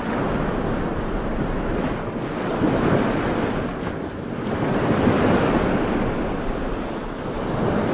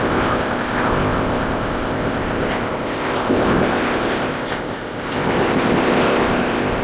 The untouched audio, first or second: first